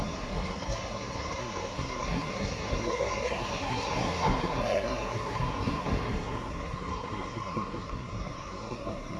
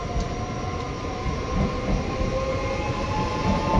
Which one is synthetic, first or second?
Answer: first